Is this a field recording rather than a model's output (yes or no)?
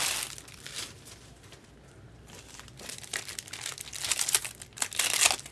yes